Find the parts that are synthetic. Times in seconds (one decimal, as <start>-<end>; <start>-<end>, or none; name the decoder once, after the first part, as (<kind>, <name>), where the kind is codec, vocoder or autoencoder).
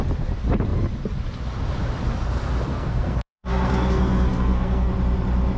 2.7-4.9 (codec, SNAC)